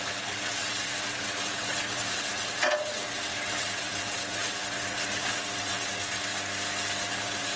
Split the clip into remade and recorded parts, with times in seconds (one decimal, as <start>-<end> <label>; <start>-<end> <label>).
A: 0.0-6.3 remade; 6.3-7.0 recorded; 7.0-7.6 remade